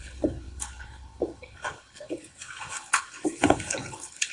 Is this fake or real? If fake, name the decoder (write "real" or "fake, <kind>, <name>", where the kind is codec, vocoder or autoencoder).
fake, codec, HILCodec